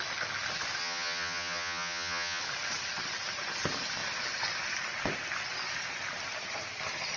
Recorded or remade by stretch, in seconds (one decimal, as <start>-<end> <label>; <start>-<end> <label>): 0.0-0.8 recorded; 0.8-2.4 remade; 2.4-7.2 recorded